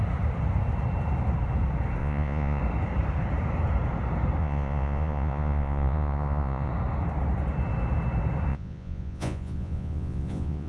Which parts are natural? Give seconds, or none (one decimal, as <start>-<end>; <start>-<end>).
0.0-2.0; 2.6-4.4; 6.7-8.5